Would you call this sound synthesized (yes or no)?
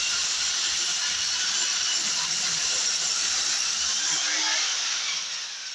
no